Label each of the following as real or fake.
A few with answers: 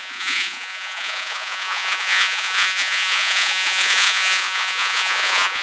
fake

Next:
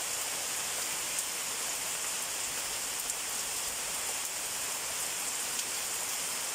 real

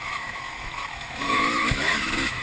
fake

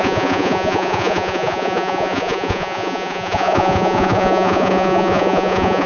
fake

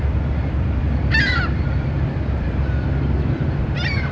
fake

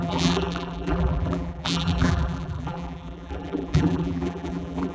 fake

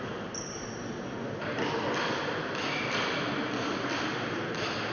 real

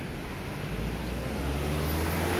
real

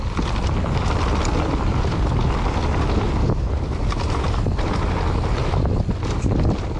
real